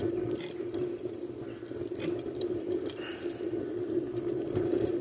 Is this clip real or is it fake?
real